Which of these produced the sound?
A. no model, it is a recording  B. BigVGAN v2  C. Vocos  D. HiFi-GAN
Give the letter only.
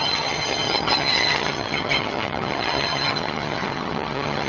D